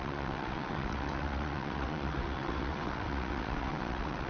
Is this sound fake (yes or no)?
yes